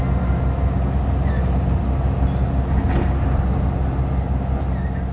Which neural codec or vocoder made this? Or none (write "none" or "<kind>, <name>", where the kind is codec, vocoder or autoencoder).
none